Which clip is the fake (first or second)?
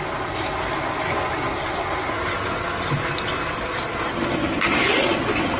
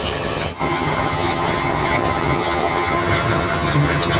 second